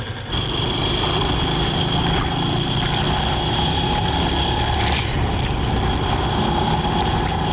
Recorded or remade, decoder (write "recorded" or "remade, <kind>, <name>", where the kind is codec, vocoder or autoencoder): recorded